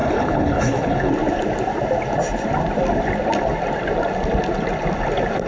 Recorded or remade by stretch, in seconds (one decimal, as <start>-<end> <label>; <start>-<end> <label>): 0.0-1.1 remade; 1.1-5.5 recorded